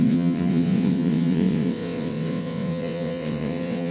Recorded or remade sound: remade